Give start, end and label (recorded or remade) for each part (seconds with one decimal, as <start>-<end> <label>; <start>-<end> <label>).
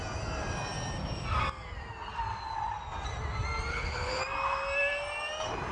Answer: 0.0-3.7 recorded; 3.7-4.2 remade; 4.2-5.7 recorded